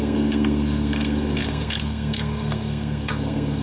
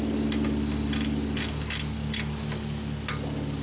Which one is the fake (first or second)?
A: first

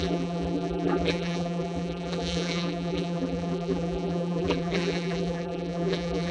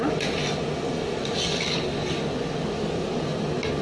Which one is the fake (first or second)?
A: first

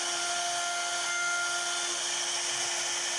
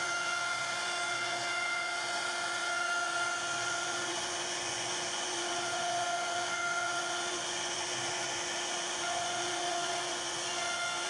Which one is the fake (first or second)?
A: second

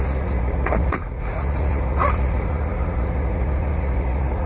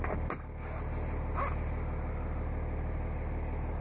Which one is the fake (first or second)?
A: first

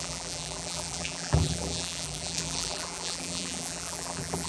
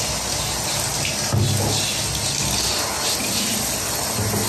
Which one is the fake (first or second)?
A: first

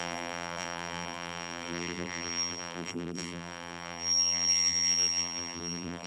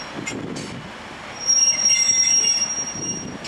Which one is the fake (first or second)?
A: first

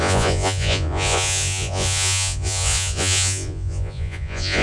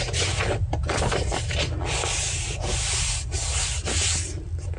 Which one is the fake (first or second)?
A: first